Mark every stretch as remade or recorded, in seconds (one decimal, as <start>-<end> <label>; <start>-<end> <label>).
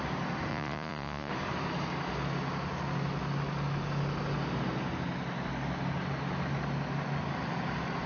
0.0-0.5 recorded; 0.5-1.3 remade; 1.3-8.1 recorded